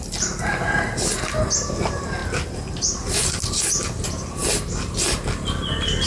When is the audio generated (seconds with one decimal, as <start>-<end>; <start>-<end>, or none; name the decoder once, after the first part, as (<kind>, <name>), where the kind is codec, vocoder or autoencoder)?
none